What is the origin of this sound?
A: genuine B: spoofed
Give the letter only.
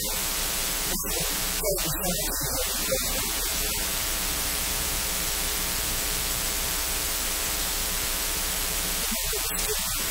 B